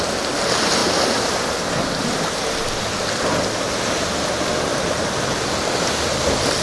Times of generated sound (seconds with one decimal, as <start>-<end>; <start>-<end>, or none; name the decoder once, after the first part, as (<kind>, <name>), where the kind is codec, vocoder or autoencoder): 4.7-5.6 (vocoder, BigVGAN v2)